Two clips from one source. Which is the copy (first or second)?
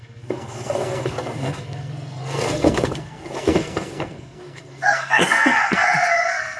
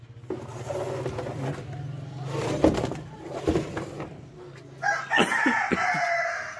first